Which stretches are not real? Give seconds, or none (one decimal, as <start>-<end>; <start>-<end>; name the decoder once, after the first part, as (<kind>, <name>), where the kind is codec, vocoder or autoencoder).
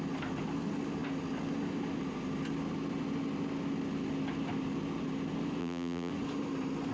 5.6-6.1 (vocoder, BigVGAN v2)